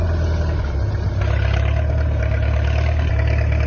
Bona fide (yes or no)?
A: yes